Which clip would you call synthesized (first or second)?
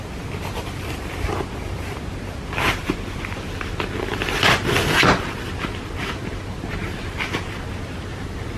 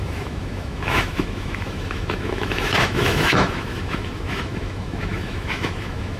second